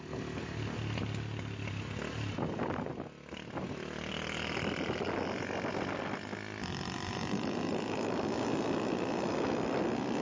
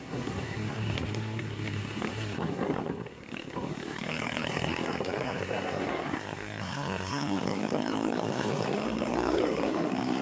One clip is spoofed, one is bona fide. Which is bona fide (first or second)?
first